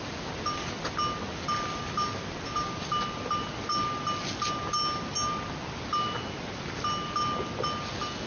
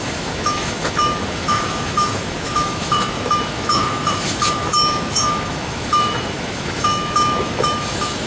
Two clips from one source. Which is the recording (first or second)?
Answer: first